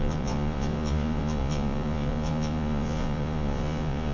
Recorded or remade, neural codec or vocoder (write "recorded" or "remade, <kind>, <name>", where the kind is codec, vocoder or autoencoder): remade, vocoder, Vocos